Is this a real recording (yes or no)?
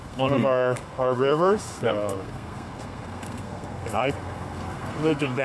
no